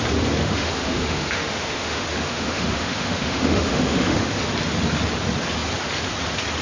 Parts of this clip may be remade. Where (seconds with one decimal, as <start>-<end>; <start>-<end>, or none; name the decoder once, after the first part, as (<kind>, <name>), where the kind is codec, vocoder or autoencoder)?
0.4-4.4 (autoencoder, DAC-VAE)